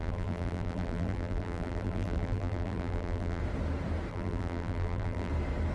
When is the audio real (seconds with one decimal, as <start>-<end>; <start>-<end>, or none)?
3.4-4.1; 5.3-5.7